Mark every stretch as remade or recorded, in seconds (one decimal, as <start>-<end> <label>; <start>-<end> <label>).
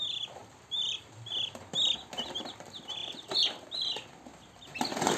0.0-0.4 recorded; 0.4-1.3 remade; 1.3-5.2 recorded